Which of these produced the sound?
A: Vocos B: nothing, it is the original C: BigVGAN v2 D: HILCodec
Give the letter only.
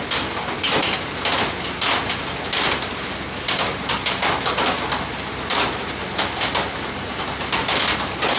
B